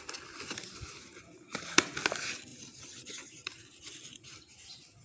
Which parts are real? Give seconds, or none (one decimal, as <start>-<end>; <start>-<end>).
0.0-2.5; 4.6-5.0